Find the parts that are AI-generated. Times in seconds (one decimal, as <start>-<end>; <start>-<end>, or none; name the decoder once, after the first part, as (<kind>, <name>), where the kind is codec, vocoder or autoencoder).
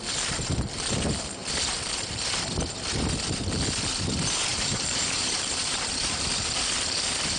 4.5-6.3 (vocoder, BigVGAN v2)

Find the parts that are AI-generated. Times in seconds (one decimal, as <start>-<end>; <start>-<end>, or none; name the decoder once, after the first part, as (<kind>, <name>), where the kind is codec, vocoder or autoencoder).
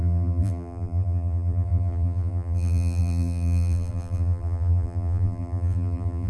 0.0-6.3 (vocoder, BigVGAN v2)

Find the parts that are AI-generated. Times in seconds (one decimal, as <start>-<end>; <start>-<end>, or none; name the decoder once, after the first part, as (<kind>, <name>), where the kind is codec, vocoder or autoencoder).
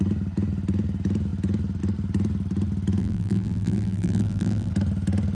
3.0-4.7 (vocoder, BigVGAN v2)